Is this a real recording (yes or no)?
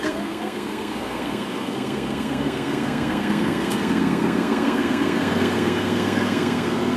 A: no